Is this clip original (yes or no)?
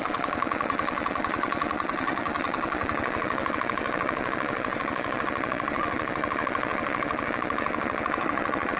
no